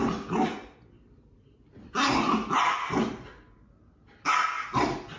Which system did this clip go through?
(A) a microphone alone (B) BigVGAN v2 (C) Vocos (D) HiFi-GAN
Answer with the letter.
A